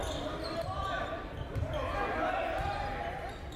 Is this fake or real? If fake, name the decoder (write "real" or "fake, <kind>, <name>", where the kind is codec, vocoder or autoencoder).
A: real